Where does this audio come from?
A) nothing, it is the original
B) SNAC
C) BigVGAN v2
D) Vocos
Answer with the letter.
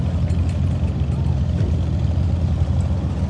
A